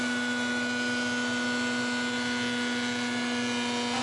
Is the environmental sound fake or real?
real